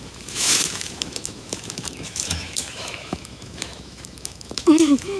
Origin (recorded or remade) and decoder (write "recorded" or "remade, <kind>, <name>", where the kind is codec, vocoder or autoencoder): remade, autoencoder, DAC-VAE